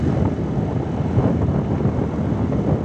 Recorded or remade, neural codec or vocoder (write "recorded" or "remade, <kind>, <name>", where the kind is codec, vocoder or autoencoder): recorded